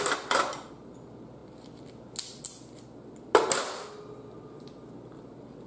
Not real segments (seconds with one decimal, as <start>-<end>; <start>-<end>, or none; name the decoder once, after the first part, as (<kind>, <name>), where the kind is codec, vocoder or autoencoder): none